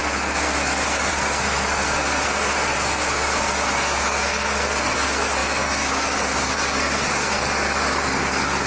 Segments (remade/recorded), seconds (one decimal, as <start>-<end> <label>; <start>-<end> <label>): 0.0-8.7 remade